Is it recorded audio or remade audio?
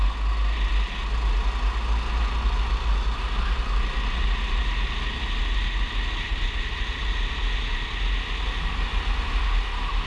recorded